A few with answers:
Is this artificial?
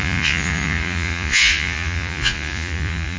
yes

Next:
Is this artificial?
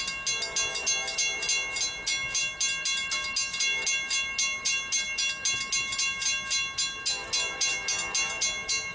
no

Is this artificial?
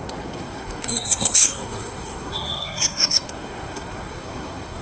yes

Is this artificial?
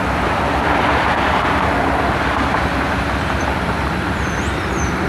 yes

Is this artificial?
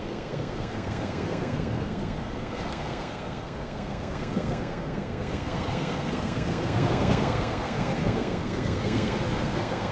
yes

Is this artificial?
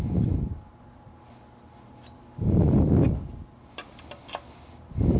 no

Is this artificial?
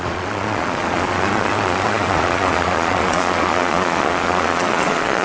yes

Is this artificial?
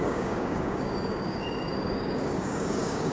yes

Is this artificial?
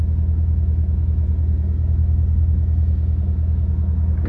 no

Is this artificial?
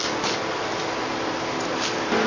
no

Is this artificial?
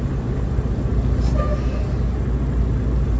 no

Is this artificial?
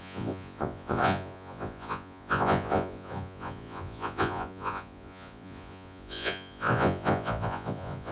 yes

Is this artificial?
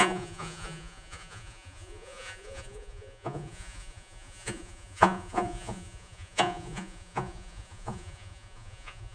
yes